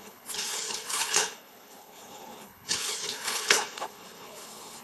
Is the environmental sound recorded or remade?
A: remade